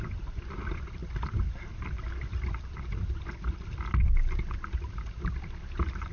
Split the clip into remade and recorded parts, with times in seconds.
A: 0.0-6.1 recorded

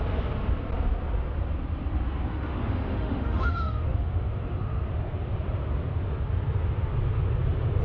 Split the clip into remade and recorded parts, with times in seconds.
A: 0.0-2.3 recorded; 2.3-4.8 remade; 4.8-7.8 recorded

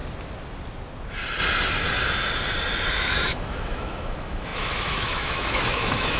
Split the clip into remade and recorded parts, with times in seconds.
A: 0.0-2.9 recorded; 2.9-6.2 remade

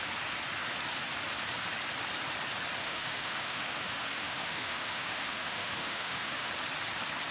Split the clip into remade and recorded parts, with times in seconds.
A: 0.0-2.8 recorded; 2.8-6.5 remade; 6.5-7.3 recorded